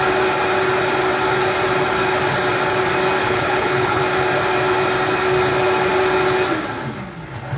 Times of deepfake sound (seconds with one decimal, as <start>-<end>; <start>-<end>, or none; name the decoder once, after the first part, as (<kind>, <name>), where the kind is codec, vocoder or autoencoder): 3.2-4.0 (codec, HILCodec)